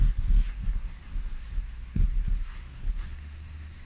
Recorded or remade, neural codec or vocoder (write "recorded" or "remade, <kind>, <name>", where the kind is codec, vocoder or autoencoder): remade, codec, SNAC